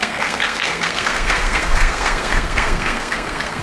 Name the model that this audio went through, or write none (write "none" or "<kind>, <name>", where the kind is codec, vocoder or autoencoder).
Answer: codec, SNAC